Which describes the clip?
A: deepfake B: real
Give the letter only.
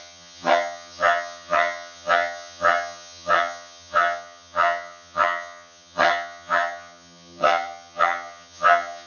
A